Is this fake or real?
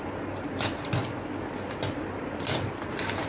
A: real